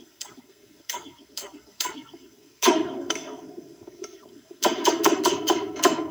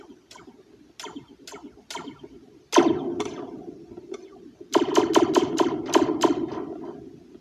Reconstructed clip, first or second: first